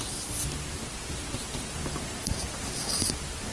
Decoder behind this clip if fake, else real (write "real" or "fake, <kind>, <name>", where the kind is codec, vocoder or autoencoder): real